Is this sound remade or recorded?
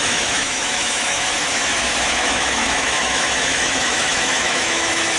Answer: remade